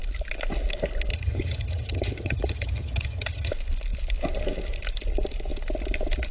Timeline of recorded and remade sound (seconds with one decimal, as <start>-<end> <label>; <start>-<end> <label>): 0.0-1.1 recorded; 1.1-3.5 remade; 3.5-6.3 recorded